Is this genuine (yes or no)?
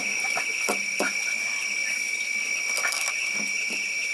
yes